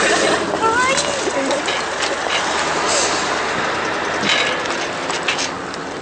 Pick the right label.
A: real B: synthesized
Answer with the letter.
A